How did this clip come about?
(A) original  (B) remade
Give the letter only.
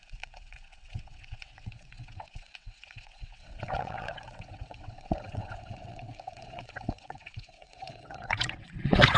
B